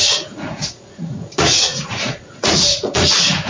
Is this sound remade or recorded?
remade